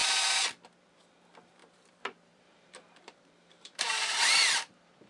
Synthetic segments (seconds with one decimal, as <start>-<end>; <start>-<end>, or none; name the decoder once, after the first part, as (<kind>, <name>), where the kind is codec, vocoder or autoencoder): 1.6-5.1 (vocoder, BigVGAN v2)

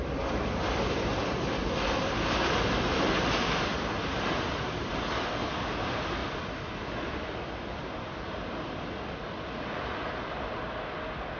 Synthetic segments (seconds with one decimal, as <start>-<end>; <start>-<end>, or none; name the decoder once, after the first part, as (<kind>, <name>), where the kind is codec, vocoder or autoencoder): none

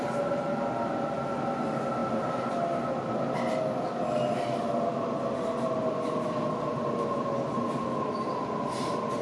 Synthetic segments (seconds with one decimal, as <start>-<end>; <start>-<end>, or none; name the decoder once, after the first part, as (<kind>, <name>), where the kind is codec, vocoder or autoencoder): none

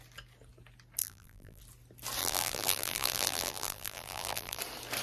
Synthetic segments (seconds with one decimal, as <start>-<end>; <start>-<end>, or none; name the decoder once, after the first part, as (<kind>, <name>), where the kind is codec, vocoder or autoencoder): 1.0-1.6 (vocoder, BigVGAN v2); 2.2-4.6

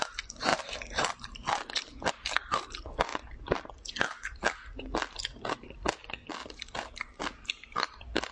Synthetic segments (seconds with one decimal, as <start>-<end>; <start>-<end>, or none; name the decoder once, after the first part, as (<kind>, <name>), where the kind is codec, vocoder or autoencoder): 0.5-2.1 (vocoder, BigVGAN v2); 3.1-3.7

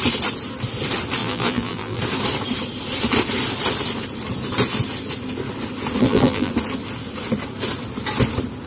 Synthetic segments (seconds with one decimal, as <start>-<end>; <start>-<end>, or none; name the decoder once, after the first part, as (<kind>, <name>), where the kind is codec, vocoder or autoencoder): 1.2-2.0 (vocoder, BigVGAN v2); 6.0-6.5

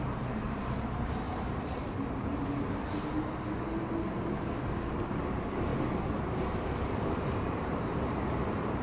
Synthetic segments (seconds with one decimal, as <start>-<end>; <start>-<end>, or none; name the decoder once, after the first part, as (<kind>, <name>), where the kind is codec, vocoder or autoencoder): 0.0-2.3 (vocoder, BigVGAN v2); 4.9-5.7; 6.3-8.8

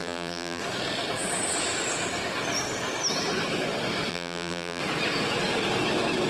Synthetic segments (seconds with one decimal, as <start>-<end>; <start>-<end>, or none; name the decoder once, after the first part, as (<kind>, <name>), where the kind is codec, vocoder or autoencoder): 0.0-0.6 (vocoder, BigVGAN v2); 4.1-4.8